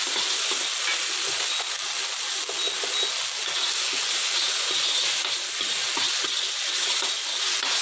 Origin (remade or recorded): recorded